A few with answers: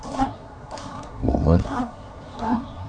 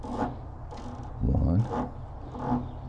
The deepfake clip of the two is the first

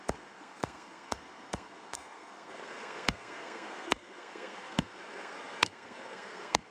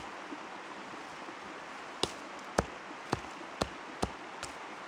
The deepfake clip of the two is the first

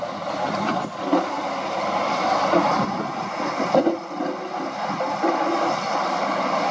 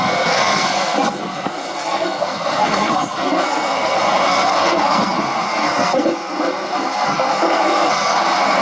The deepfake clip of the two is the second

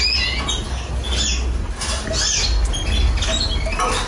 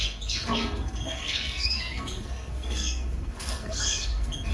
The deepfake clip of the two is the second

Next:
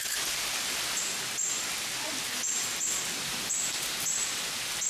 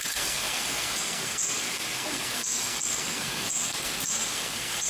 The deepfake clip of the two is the second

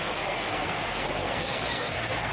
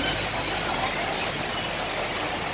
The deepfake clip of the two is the first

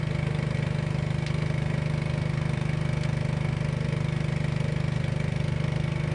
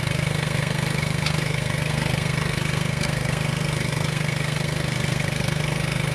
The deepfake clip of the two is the second